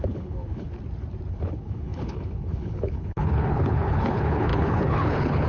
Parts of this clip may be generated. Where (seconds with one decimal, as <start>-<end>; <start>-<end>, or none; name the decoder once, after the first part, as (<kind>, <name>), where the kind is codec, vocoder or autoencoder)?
0.0-0.7 (codec, HILCodec); 1.3-5.5